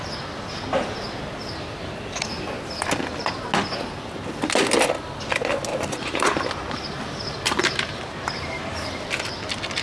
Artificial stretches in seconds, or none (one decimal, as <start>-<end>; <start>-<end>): 5.7-8.6